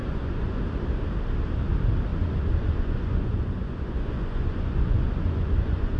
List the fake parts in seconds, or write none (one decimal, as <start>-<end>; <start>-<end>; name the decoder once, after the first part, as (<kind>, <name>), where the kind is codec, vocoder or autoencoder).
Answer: 0.0-0.6 (vocoder, Vocos); 2.1-6.0